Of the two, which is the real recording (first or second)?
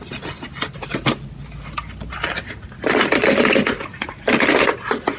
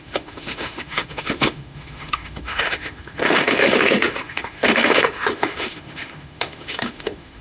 first